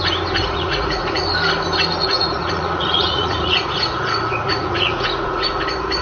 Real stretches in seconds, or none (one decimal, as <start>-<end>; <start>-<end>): 0.0-0.4; 1.2-2.0; 5.6-6.0